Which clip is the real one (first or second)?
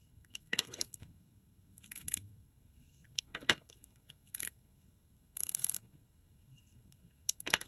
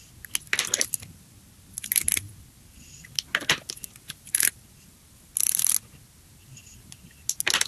second